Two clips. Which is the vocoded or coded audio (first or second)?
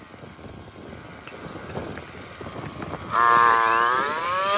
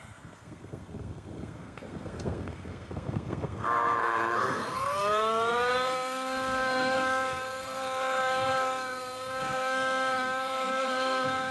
second